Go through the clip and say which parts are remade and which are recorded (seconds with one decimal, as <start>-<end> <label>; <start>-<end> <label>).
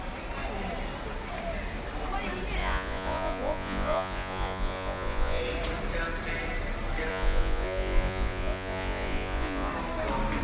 0.0-2.6 recorded; 2.6-5.4 remade; 5.4-7.1 recorded; 7.1-9.7 remade; 9.7-10.4 recorded